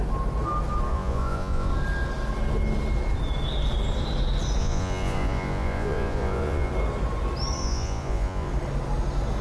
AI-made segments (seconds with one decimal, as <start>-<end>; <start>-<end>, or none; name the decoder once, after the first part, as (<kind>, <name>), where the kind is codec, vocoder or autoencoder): 0.9-1.7 (vocoder, Vocos); 4.6-6.7; 7.6-8.5